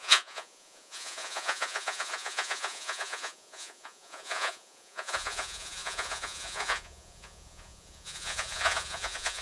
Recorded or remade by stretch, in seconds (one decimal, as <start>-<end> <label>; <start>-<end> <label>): 0.0-9.4 remade